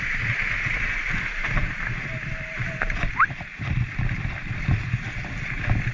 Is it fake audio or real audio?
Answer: real